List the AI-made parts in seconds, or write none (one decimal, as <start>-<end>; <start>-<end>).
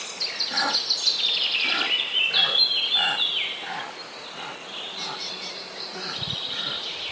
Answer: none